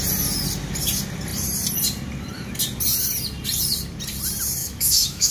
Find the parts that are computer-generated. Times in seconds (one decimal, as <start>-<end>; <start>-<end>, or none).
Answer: 4.6-5.3